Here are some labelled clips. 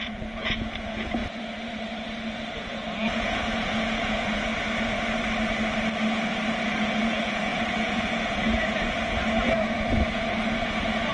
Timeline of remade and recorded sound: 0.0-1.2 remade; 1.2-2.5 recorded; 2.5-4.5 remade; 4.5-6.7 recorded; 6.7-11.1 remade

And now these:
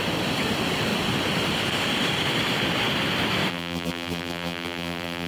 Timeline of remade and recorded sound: 0.0-3.5 recorded; 3.5-5.3 remade

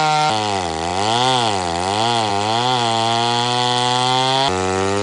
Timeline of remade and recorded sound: 0.0-5.0 recorded

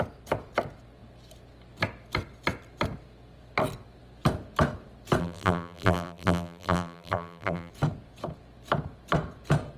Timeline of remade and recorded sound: 0.0-5.2 recorded; 5.2-7.7 remade; 7.7-9.8 recorded

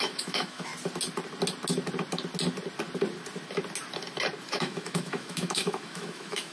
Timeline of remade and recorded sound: 0.0-0.7 remade; 0.7-4.5 recorded; 4.5-6.5 remade

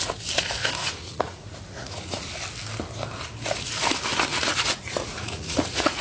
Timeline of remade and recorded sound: 0.0-0.8 recorded; 0.8-2.3 remade; 2.3-4.3 recorded; 4.3-6.0 remade